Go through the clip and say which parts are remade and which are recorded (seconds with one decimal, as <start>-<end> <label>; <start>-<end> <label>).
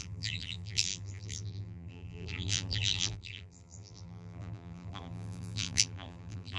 0.0-6.6 remade